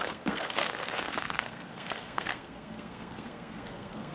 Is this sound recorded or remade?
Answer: remade